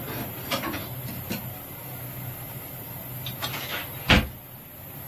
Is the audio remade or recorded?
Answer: recorded